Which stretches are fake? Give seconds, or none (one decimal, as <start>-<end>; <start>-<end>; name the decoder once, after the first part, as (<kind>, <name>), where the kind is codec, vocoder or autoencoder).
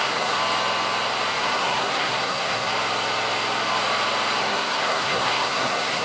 0.0-0.4 (codec, SNAC); 1.3-2.7; 4.4-6.0